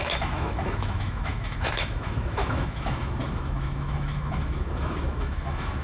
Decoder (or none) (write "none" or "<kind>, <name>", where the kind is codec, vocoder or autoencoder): autoencoder, DAC-VAE